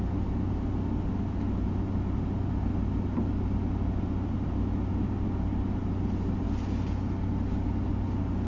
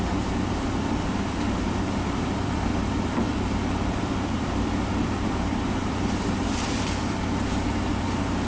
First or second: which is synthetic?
second